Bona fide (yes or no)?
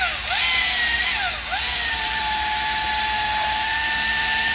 yes